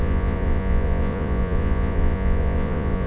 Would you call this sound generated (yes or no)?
yes